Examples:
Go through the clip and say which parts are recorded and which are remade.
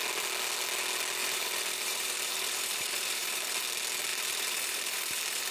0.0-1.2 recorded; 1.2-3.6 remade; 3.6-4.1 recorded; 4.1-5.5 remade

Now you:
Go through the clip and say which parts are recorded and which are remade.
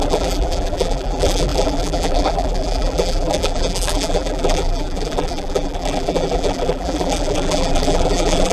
0.0-8.5 remade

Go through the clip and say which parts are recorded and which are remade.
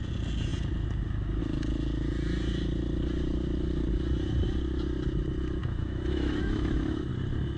0.0-5.6 recorded; 5.6-7.1 remade; 7.1-7.6 recorded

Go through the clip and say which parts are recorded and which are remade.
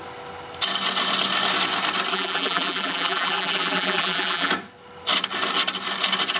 0.0-2.1 recorded; 2.1-4.5 remade; 4.5-6.4 recorded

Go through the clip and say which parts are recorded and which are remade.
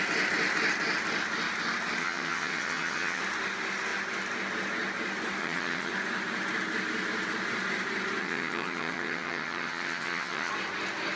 0.0-2.0 recorded; 2.0-3.2 remade; 3.2-5.4 recorded; 5.4-5.9 remade; 5.9-8.2 recorded; 8.2-10.5 remade; 10.5-11.2 recorded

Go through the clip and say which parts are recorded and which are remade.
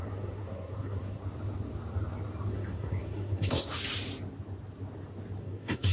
0.0-1.2 remade; 1.2-2.5 recorded; 2.5-3.7 remade; 3.7-5.4 recorded; 5.4-5.9 remade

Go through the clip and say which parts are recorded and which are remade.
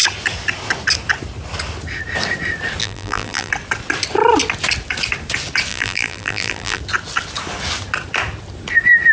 0.0-2.8 recorded; 2.8-3.5 remade; 3.5-5.7 recorded; 5.7-6.8 remade; 6.8-9.1 recorded